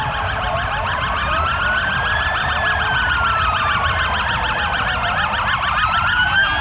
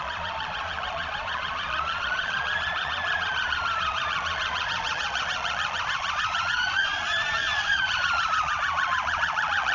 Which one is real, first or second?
first